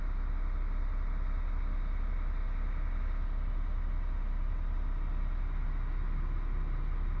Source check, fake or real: real